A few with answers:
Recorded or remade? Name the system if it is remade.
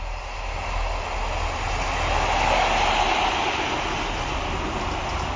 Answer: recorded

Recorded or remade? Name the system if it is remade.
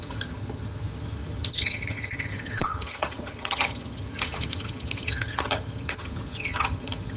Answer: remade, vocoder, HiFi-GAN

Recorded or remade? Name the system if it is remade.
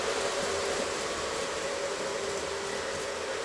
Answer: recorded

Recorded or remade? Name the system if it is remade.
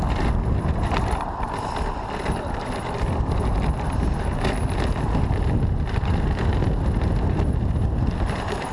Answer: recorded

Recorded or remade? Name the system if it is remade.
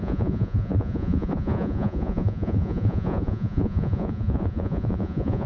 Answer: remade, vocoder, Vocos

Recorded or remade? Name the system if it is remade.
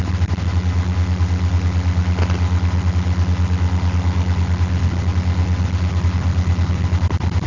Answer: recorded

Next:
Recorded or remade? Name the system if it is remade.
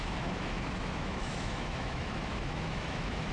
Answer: remade, autoencoder, DAC-VAE